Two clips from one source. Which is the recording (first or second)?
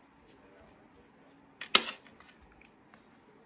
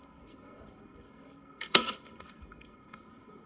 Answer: first